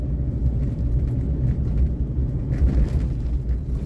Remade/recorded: recorded